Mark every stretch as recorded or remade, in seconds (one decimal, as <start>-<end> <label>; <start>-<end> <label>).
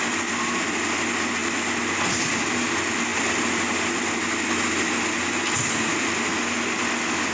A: 0.0-7.3 recorded